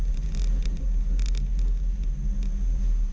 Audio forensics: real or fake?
real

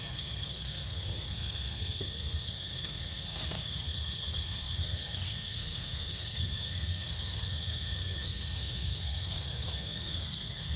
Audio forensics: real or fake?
fake